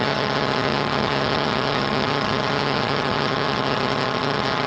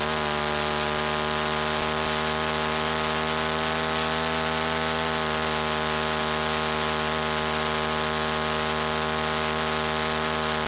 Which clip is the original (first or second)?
second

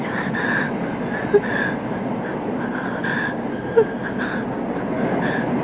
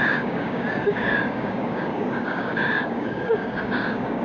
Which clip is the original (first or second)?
first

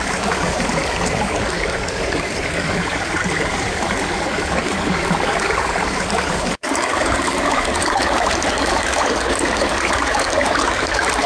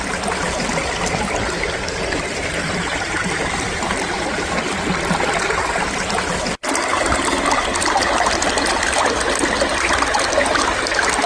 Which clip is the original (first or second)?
second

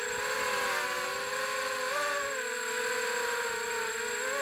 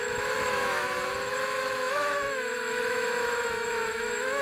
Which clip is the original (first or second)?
first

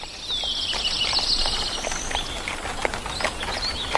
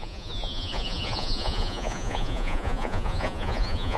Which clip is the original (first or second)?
first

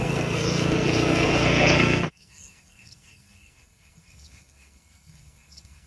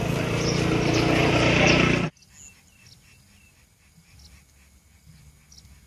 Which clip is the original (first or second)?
second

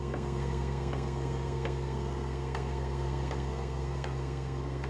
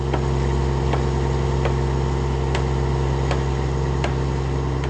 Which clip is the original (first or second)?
second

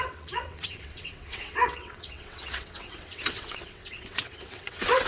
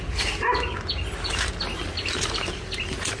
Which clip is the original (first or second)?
second